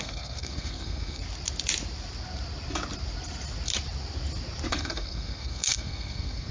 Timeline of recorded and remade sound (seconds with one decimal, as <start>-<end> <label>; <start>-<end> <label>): 0.0-1.2 remade; 1.2-4.7 recorded; 4.7-6.5 remade